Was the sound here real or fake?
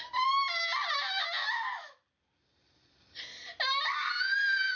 real